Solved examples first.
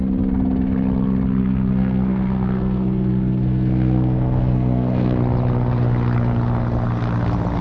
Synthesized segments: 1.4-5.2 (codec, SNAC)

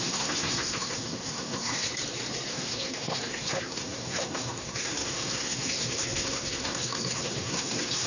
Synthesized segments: 0.0-1.9 (codec, SNAC); 2.5-8.1